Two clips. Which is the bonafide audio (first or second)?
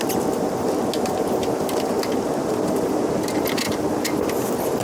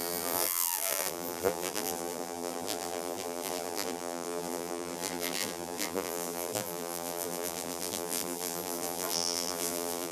first